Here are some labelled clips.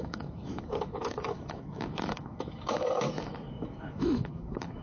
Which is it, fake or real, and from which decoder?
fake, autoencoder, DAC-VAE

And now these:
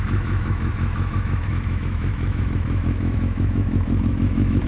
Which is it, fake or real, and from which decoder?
fake, autoencoder, DAC-VAE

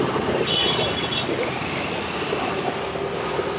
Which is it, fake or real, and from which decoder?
real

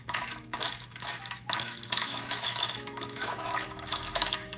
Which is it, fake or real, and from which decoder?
fake, autoencoder, DAC-VAE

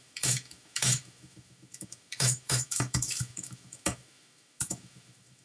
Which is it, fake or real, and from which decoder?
fake, autoencoder, DAC-VAE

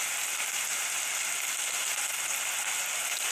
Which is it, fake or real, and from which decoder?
real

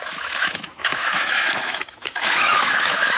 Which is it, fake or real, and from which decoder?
fake, autoencoder, DAC-VAE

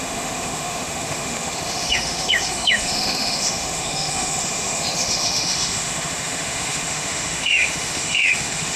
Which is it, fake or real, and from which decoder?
fake, autoencoder, DAC-VAE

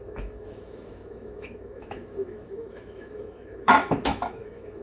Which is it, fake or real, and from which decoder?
fake, autoencoder, DAC-VAE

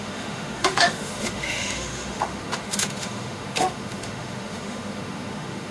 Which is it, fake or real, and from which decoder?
fake, autoencoder, DAC-VAE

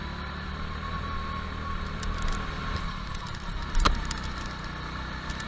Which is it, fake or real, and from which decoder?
real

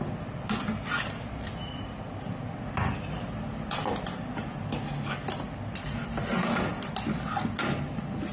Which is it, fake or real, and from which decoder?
real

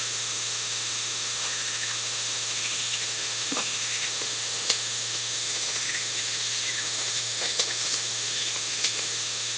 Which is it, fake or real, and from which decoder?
fake, autoencoder, DAC-VAE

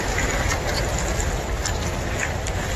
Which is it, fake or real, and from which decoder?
real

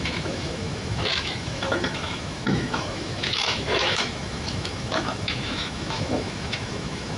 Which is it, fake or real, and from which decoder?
fake, autoencoder, DAC-VAE